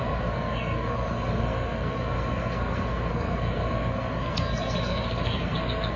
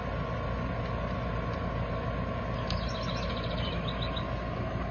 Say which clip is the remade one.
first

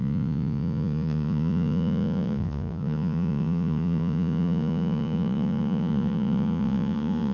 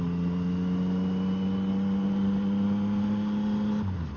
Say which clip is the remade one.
first